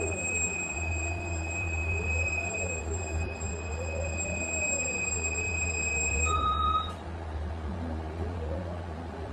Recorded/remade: remade